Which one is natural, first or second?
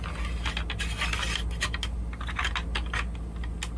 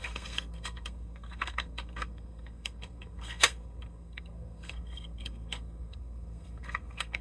first